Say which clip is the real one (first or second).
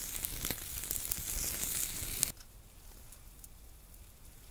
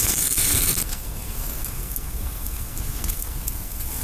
first